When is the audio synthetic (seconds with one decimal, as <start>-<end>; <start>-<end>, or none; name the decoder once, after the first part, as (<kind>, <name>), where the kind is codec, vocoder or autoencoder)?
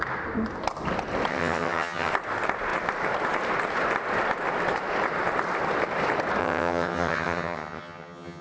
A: 1.3-2.1 (vocoder, HiFi-GAN); 6.4-8.4